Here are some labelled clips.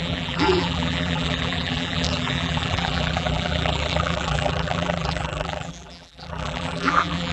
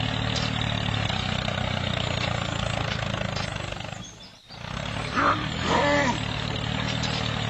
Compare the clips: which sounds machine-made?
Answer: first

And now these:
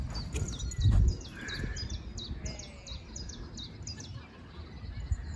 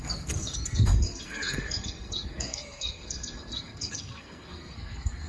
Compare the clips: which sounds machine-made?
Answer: second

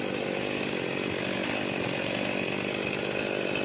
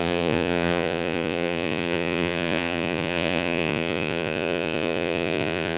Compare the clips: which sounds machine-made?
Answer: second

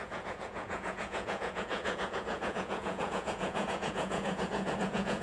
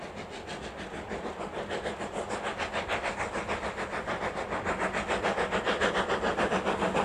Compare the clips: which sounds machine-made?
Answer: first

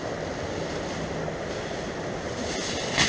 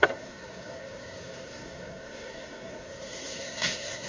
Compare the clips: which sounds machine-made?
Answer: second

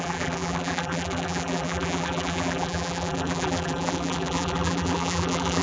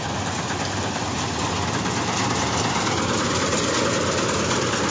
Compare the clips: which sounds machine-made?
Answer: first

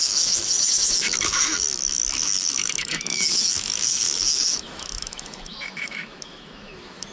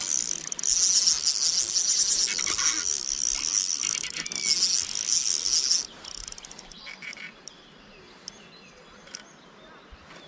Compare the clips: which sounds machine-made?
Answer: first